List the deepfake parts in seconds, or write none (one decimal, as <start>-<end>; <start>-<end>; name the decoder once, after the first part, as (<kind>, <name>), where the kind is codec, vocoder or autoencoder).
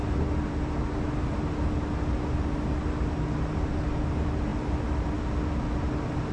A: none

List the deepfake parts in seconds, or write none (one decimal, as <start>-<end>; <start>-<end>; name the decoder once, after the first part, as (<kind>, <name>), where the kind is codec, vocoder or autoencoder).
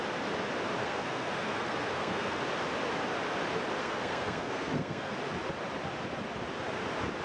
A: 0.8-2.4 (codec, SNAC); 3.8-5.1